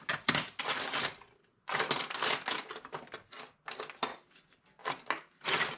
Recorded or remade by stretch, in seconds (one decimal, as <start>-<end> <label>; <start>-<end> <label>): 0.0-5.8 recorded